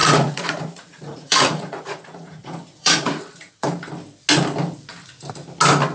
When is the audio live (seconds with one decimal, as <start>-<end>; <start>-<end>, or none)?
3.5-5.9

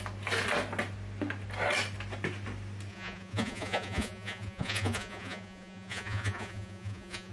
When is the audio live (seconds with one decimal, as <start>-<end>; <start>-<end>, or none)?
0.0-2.9

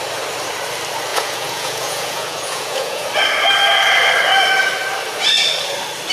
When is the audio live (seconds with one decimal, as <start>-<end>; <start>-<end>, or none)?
0.0-1.1; 3.1-6.1

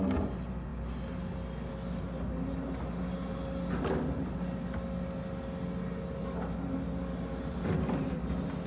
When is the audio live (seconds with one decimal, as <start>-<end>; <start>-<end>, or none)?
0.0-8.7

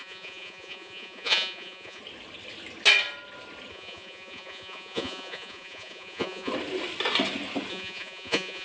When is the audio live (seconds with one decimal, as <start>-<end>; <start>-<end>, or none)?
2.0-3.7; 6.5-7.7

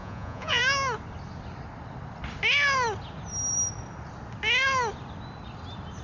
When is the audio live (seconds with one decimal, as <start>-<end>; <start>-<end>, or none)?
0.6-6.0

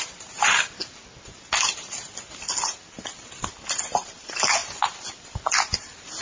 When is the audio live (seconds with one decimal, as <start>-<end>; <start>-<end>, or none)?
0.0-6.2

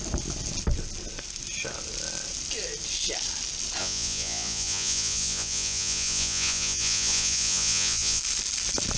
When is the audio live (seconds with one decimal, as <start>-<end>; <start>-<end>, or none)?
0.0-3.8; 8.2-9.0